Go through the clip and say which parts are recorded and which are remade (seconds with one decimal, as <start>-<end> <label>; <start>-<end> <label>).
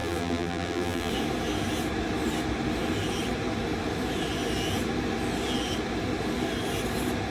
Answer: 0.0-1.1 remade; 1.1-7.3 recorded